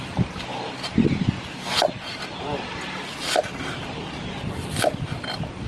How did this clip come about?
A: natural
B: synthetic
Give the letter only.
A